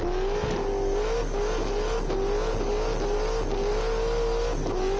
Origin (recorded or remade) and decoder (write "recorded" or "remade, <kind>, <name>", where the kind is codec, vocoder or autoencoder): recorded